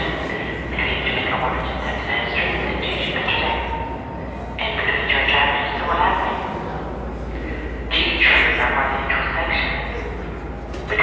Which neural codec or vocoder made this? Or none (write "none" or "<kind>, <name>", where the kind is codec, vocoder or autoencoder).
none